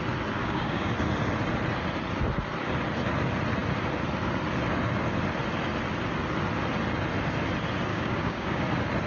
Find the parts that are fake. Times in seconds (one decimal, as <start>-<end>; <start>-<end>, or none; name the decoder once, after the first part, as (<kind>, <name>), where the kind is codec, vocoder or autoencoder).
0.4-0.9 (codec, DAC); 7.9-8.6